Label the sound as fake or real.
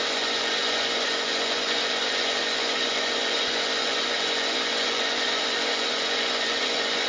fake